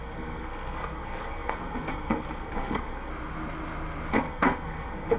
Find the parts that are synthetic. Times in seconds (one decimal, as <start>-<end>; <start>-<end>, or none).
0.0-3.1; 4.1-5.2